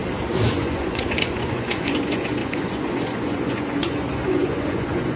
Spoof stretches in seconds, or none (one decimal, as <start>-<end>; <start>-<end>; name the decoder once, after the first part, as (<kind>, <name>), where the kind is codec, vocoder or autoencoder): 0.5-5.2 (vocoder, Vocos)